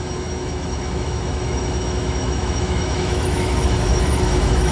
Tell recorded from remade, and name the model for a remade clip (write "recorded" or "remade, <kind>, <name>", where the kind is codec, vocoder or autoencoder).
remade, autoencoder, DAC-VAE